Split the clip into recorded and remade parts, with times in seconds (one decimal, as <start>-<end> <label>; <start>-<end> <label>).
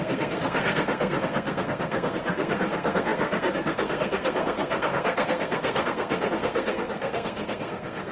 0.0-8.1 remade